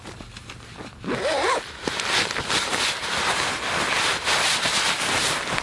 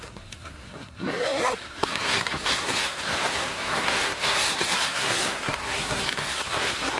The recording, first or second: first